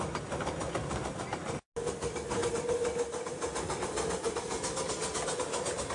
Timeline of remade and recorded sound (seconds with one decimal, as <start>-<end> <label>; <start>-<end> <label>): 0.0-5.9 recorded